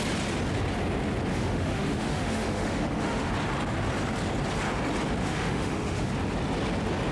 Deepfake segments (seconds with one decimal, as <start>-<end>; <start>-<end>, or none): 1.3-3.3; 5.2-6.1